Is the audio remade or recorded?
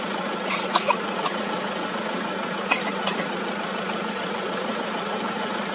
remade